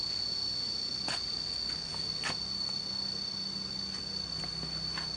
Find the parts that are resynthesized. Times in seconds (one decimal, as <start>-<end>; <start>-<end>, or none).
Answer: none

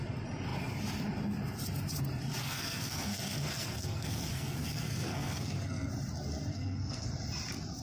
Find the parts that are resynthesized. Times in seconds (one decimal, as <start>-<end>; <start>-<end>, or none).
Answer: 2.4-5.9; 6.5-7.1

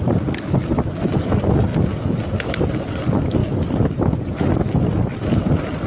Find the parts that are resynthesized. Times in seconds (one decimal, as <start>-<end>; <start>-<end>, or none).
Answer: none

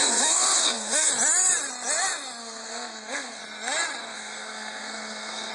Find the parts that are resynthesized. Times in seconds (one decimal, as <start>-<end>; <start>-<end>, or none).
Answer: 0.0-1.1; 2.4-3.4; 4.0-5.5